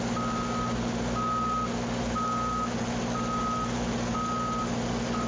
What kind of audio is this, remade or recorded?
recorded